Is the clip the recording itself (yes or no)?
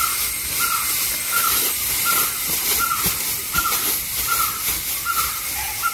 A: yes